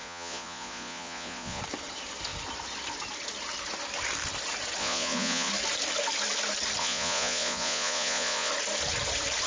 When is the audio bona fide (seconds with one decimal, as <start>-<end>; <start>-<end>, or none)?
1.6-4.8; 5.5-6.8; 8.5-9.5